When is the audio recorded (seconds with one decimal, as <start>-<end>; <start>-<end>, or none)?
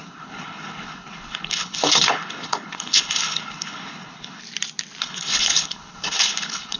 4.4-5.0